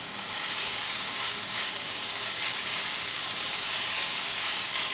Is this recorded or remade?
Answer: remade